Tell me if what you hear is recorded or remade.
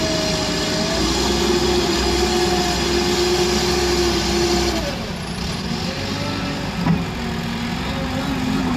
recorded